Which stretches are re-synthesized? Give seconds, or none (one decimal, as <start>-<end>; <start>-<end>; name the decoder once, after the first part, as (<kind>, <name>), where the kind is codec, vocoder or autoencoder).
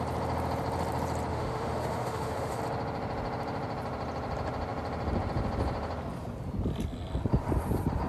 1.3-2.6 (autoencoder, DAC-VAE)